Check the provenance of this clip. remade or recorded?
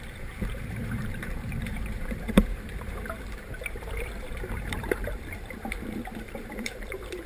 remade